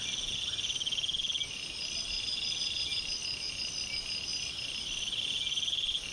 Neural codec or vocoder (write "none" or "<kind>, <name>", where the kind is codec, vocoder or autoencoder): none